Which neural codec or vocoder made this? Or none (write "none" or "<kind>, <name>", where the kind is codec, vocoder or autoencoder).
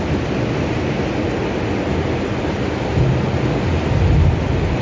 none